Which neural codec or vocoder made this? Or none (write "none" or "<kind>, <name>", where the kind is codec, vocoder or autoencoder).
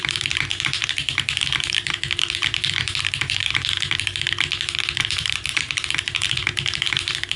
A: vocoder, BigVGAN v2